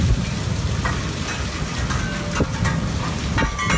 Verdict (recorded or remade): recorded